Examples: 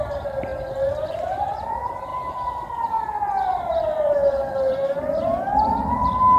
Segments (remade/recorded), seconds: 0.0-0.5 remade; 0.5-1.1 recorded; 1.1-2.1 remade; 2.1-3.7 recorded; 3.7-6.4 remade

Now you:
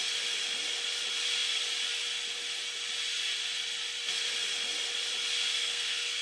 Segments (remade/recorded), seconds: 0.0-5.6 recorded; 5.6-6.2 remade

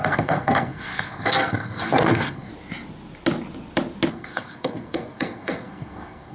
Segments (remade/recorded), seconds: 0.0-2.5 remade; 2.5-4.1 recorded; 4.1-6.3 remade

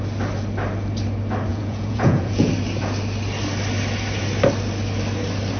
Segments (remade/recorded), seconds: 0.0-1.5 recorded; 1.5-2.5 remade; 2.5-5.6 recorded